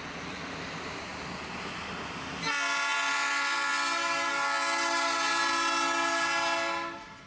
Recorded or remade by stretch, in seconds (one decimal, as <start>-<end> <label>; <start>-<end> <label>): 0.0-7.3 recorded